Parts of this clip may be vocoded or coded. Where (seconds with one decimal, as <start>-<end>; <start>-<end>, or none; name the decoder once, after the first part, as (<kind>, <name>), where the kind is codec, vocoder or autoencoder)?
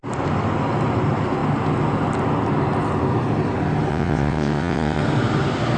3.9-5.0 (vocoder, WaveNeXt)